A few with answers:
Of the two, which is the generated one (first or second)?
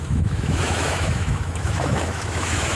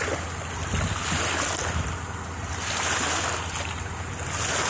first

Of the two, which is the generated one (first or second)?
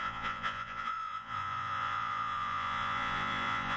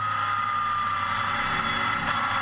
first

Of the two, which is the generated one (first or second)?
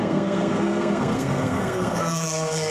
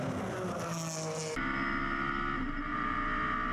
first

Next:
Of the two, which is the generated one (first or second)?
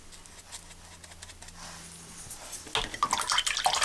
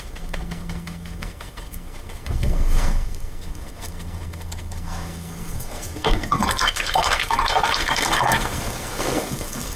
second